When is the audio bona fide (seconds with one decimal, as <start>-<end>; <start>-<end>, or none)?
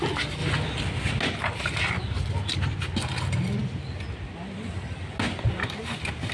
0.0-6.3